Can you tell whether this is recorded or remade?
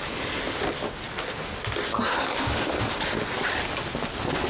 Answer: recorded